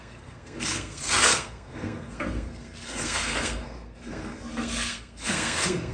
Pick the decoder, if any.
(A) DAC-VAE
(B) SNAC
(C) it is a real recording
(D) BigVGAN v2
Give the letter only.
B